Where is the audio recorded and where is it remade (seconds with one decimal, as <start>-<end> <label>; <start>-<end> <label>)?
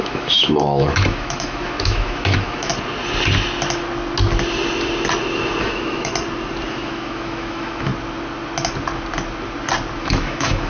0.0-2.7 remade; 2.7-5.6 recorded; 5.6-6.1 remade; 6.1-6.7 recorded; 6.7-7.9 remade; 7.9-10.0 recorded; 10.0-10.7 remade